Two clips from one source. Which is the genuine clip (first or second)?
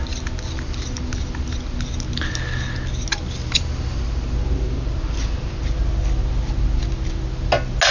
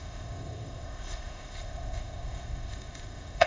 first